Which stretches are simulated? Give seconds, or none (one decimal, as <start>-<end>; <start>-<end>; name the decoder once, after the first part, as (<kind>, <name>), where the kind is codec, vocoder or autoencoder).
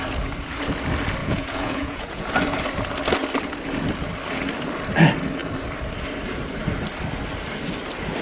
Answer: 1.2-2.3 (vocoder, Vocos)